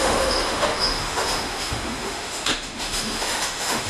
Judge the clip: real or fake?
fake